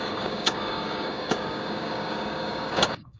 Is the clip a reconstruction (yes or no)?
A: yes